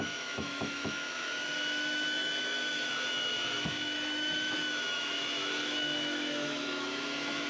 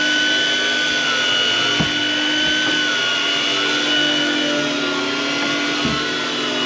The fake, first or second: first